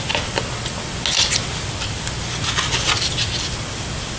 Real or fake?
real